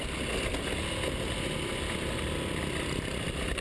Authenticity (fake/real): real